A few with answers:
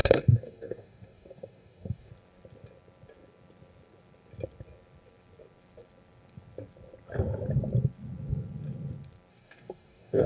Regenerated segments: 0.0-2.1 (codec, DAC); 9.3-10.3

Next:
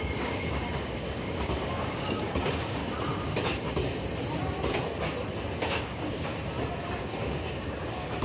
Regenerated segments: 0.0-2.8 (codec, DAC); 5.8-6.3; 7.0-8.2